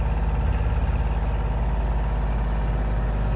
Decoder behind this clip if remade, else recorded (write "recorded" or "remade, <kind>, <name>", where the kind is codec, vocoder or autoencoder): recorded